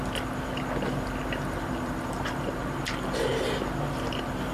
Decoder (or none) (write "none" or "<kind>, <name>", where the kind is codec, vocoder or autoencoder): none